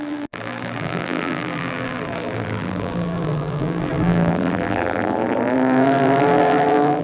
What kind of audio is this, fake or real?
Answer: fake